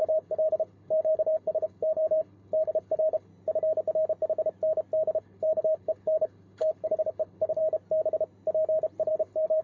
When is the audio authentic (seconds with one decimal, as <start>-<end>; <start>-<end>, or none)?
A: 3.3-5.2; 7.6-9.1